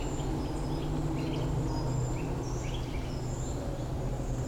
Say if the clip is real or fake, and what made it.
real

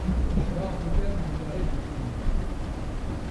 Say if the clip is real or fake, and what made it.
real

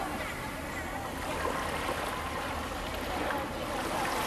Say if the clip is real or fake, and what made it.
real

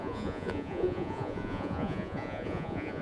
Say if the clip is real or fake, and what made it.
fake, vocoder, Vocos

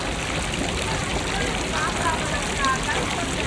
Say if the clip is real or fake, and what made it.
real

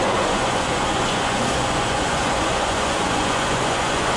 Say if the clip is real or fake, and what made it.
fake, vocoder, Vocos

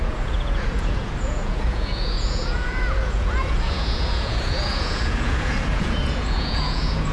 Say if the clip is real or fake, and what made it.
fake, vocoder, Vocos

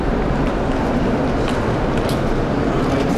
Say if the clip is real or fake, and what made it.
real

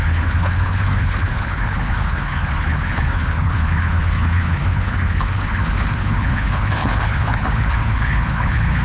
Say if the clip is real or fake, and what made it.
fake, codec, HILCodec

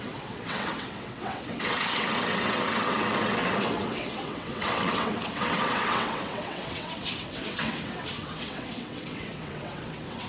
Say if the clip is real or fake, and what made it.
fake, vocoder, WaveNeXt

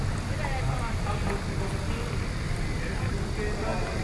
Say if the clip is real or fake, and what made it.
real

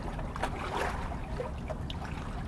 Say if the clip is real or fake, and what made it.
real